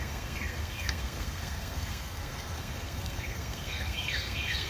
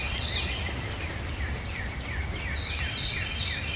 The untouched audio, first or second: second